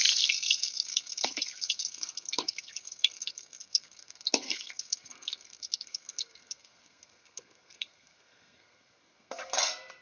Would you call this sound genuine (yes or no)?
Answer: no